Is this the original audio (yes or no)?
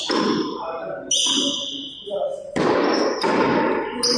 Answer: yes